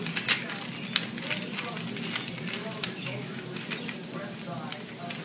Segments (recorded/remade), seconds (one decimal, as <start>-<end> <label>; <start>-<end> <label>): 0.0-2.6 recorded; 2.6-3.6 remade; 3.6-5.2 recorded